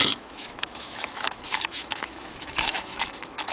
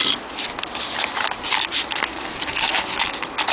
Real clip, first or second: second